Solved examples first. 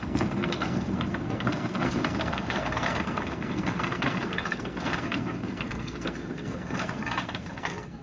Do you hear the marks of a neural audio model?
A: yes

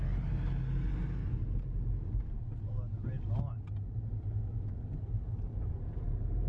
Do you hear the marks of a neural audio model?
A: no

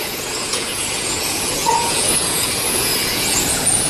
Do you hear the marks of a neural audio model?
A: yes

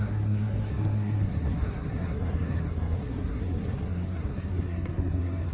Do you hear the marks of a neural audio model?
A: yes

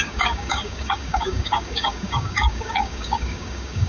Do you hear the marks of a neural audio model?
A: yes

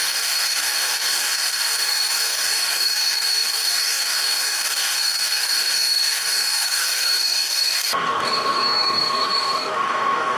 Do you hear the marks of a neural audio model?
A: yes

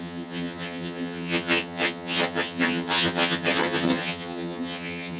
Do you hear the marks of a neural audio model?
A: yes